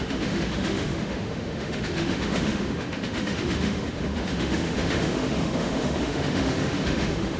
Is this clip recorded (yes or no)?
no